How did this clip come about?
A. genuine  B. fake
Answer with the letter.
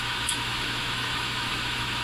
B